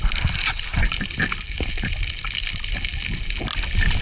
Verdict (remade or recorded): recorded